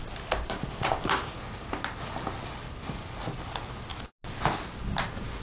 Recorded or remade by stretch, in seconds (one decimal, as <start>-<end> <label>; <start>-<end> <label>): 0.0-5.4 recorded